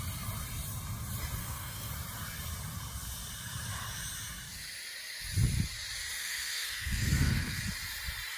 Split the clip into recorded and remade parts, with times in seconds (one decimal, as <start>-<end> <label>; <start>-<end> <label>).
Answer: 0.0-1.4 recorded; 1.4-1.9 remade; 1.9-6.2 recorded; 6.2-7.6 remade; 7.6-8.4 recorded